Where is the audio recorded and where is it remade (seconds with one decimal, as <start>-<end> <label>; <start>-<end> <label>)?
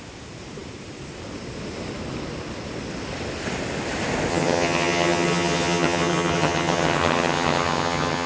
0.0-4.3 recorded; 4.3-8.3 remade